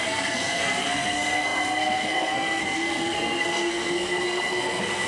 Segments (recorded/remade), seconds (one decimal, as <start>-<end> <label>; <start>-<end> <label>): 0.0-5.1 remade